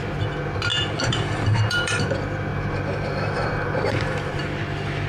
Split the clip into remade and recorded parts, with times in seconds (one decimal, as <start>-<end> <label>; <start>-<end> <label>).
0.0-0.7 recorded; 0.7-2.0 remade; 2.0-2.5 recorded; 2.5-4.4 remade; 4.4-5.1 recorded

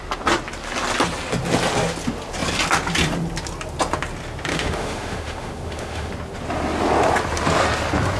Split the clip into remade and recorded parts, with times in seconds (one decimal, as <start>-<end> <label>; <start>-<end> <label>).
0.0-4.5 recorded; 4.5-6.1 remade; 6.1-8.2 recorded

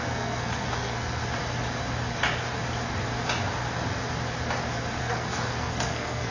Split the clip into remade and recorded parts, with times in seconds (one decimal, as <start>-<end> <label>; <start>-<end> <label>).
0.0-1.2 remade; 1.2-5.0 recorded; 5.0-6.3 remade